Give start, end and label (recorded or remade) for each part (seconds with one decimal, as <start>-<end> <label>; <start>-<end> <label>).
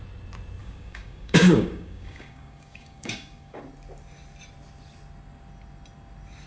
0.0-0.6 recorded; 0.6-3.6 remade; 3.6-6.5 recorded